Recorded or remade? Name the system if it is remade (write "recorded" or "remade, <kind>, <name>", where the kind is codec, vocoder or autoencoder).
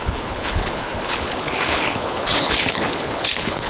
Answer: remade, codec, HILCodec